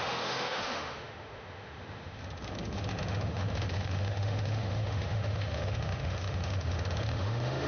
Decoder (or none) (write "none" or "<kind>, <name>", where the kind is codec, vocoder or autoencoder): autoencoder, DAC-VAE